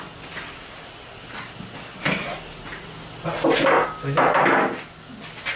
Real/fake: real